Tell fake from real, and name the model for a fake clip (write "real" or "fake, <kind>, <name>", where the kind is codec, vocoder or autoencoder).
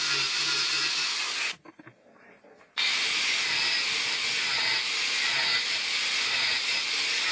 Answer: real